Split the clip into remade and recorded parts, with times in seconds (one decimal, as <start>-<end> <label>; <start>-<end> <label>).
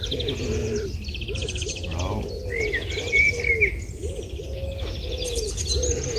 0.0-6.2 recorded